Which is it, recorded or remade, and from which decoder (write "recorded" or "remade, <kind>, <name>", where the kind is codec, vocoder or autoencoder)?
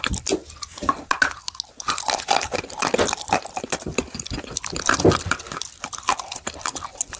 recorded